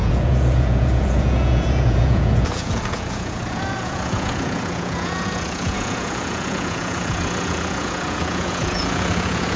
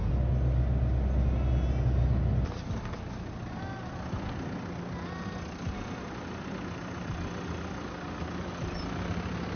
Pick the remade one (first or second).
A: first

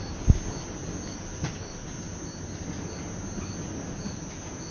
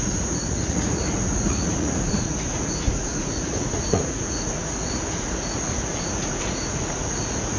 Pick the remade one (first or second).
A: second